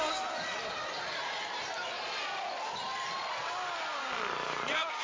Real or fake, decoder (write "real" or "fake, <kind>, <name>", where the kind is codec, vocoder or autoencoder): real